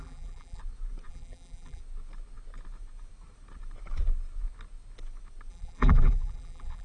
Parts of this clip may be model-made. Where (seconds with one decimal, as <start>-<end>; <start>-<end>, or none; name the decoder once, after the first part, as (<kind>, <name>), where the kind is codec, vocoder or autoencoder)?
0.0-0.6 (vocoder, BigVGAN v2); 1.1-1.8; 5.5-6.8